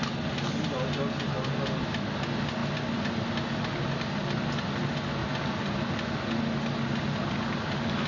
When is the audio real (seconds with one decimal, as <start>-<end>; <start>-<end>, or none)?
0.0-8.1